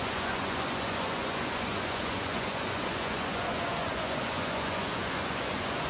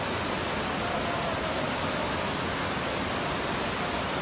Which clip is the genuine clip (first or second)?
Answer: second